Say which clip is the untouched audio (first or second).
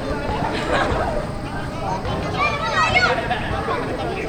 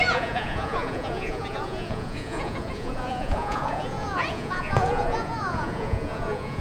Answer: first